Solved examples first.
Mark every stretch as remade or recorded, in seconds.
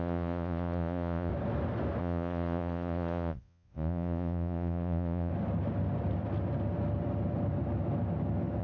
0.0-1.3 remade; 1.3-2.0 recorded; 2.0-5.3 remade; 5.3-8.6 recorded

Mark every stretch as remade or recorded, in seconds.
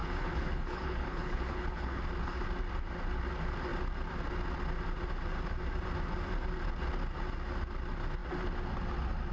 0.0-2.0 remade; 2.0-9.3 recorded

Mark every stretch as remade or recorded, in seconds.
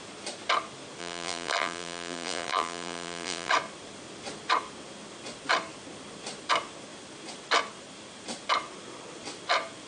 0.0-1.0 recorded; 1.0-3.5 remade; 3.5-9.9 recorded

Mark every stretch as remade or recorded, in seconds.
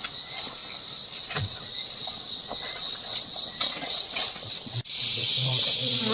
0.0-0.6 remade; 0.6-1.1 recorded; 1.1-6.1 remade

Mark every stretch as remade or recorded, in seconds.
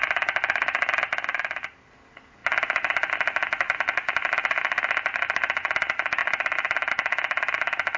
0.0-8.0 recorded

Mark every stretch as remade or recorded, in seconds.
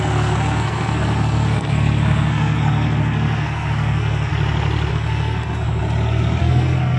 0.0-4.3 remade; 4.3-4.9 recorded; 4.9-5.8 remade; 5.8-6.4 recorded; 6.4-7.0 remade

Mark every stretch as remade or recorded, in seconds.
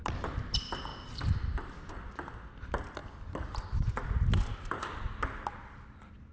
0.0-6.3 recorded